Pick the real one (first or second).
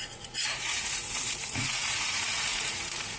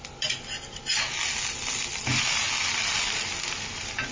second